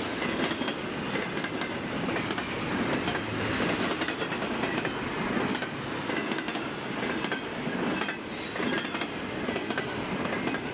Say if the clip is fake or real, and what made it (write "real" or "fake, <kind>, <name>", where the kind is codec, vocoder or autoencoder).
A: real